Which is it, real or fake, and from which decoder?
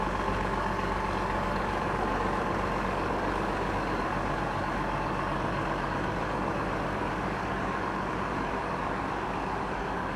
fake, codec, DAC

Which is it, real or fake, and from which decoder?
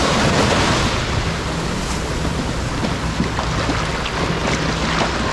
real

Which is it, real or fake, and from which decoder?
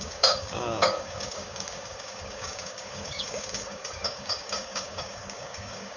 fake, codec, DAC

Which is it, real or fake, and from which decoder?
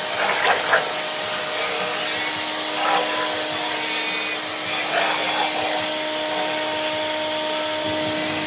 real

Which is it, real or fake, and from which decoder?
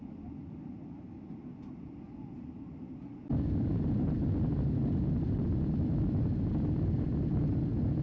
real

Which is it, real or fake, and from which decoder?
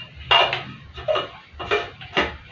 real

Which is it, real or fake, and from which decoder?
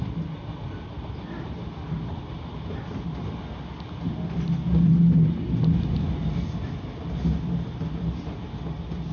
real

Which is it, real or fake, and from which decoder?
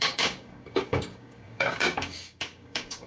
fake, codec, DAC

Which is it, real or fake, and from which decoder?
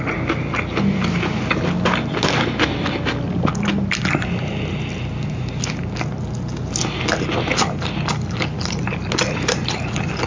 real